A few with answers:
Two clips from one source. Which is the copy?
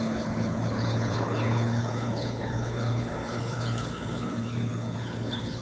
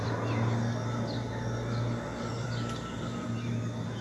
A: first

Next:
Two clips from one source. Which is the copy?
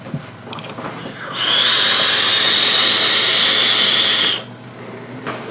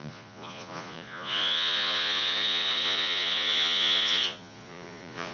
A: second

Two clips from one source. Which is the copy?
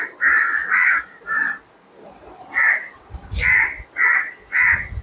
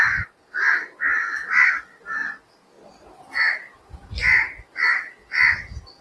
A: first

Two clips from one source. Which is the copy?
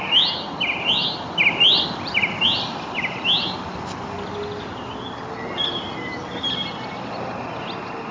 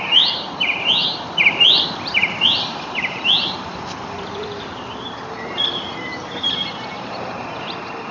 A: second